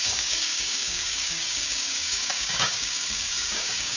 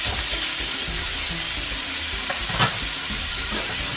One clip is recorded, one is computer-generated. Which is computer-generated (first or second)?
first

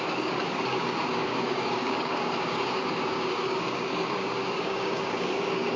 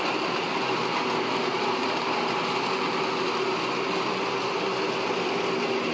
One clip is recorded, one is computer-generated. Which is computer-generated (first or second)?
first